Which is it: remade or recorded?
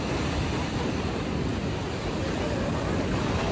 recorded